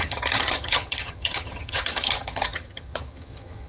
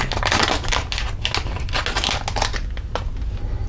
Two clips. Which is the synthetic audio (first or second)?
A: first